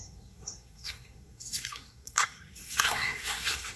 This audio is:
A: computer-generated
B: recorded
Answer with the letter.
A